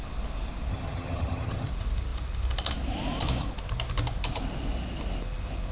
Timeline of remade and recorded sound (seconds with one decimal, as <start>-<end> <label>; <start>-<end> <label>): 0.0-0.7 recorded; 0.7-1.7 remade; 1.7-5.7 recorded